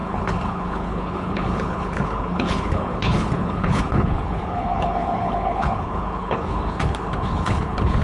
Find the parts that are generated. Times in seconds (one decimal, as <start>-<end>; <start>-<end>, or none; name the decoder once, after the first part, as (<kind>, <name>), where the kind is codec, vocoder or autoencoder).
0.0-8.0 (codec, HILCodec)